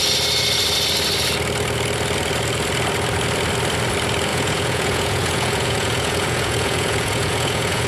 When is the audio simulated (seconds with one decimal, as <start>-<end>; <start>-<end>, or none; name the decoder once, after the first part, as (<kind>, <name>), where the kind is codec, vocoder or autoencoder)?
4.3-7.9 (vocoder, Vocos)